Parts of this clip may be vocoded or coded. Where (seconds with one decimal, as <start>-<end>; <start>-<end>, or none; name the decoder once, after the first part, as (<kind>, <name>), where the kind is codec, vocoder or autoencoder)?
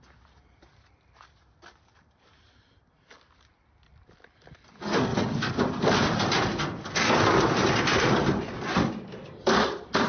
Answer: 0.0-10.1 (vocoder, BigVGAN v2)